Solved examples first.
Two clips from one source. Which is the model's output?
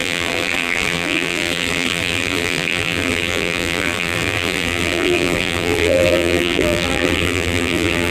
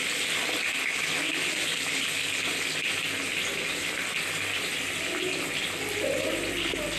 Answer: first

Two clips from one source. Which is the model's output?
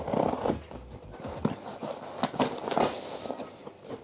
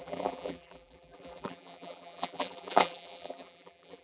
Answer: second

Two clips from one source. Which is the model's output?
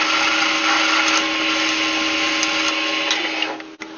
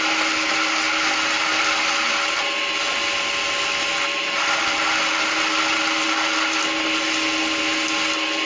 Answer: second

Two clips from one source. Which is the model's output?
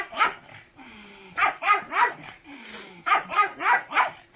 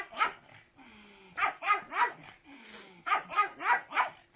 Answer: first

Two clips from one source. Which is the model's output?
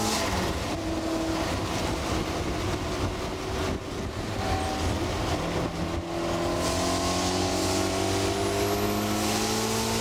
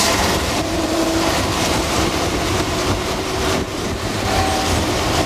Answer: second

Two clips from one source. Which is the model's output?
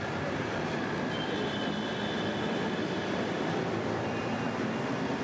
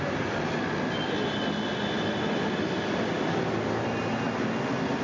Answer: first